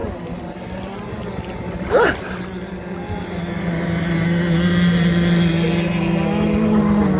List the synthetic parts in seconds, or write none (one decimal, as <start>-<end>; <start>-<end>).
none